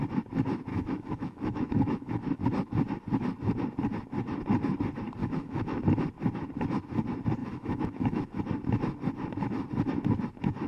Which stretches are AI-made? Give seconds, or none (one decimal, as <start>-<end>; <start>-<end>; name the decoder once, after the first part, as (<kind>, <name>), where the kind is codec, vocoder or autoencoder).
0.7-2.4 (autoencoder, DAC-VAE); 5.2-5.8; 7.4-8.4